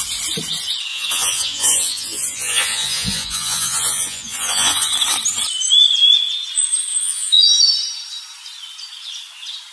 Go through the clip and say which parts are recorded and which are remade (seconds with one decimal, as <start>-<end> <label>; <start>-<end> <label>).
0.0-0.9 recorded; 0.9-4.9 remade; 4.9-6.9 recorded; 6.9-7.6 remade; 7.6-9.7 recorded